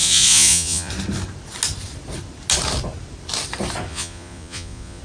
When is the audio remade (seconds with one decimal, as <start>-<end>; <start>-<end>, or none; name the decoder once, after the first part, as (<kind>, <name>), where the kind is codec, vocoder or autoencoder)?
0.0-0.9 (vocoder, Vocos); 3.9-5.0